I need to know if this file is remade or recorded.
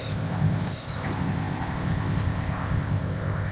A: remade